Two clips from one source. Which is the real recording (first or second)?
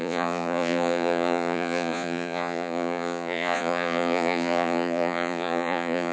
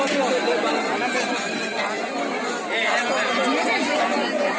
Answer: second